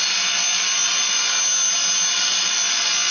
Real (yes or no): yes